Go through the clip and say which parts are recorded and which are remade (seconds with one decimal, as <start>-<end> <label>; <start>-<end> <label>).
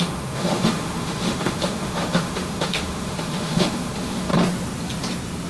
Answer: 0.0-4.3 remade; 4.3-5.5 recorded